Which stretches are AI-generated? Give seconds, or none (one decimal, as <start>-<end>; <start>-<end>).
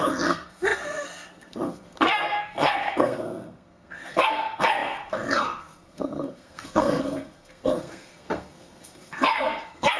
0.0-10.0